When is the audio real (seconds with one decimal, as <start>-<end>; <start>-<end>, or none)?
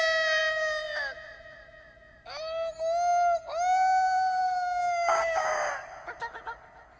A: 0.0-4.4; 5.7-7.0